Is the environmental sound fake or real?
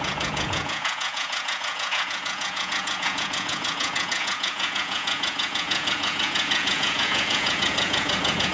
fake